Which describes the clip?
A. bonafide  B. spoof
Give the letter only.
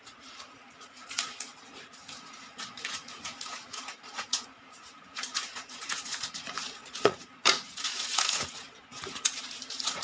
B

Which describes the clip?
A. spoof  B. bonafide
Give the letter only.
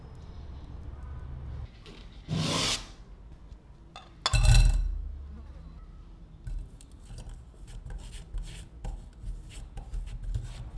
B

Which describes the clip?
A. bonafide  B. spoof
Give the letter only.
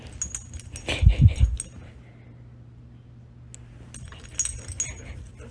A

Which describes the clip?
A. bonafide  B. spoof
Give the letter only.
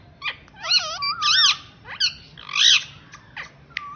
A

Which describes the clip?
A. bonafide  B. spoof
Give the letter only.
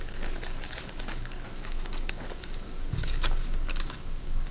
B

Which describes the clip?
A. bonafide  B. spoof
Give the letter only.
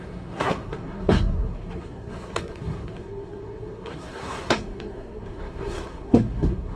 B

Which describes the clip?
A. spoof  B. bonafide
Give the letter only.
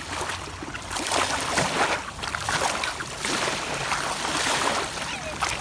B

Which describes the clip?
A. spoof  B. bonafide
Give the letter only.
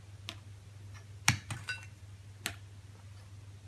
B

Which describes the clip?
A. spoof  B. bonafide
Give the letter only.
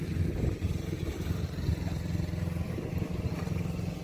A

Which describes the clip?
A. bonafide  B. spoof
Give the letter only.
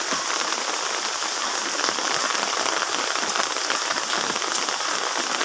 A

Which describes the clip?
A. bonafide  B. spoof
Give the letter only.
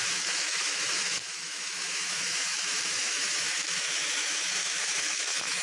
B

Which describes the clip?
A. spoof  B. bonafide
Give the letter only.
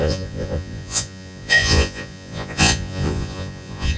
A